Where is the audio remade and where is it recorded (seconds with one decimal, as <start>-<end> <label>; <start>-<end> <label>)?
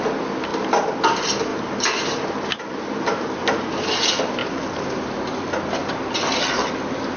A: 0.0-1.5 recorded; 1.5-3.7 remade; 3.7-4.4 recorded; 4.4-5.5 remade; 5.5-7.2 recorded